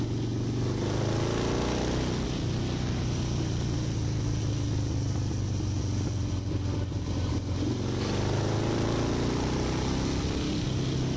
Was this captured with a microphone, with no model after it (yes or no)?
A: yes